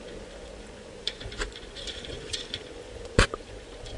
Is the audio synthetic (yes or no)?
yes